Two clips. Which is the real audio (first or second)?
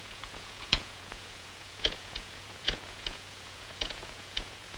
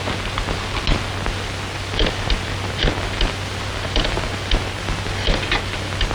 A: second